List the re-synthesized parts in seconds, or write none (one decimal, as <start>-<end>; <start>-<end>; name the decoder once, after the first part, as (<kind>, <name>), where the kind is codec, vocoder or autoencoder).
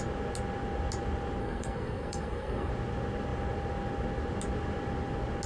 1.4-2.7 (codec, SNAC)